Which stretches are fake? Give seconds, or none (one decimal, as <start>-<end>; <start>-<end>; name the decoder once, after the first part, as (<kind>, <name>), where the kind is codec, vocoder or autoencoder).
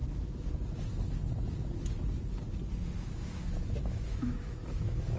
3.0-5.2 (autoencoder, DAC-VAE)